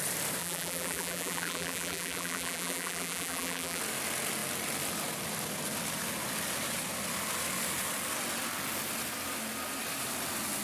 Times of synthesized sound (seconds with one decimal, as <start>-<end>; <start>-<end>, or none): 0.4-3.8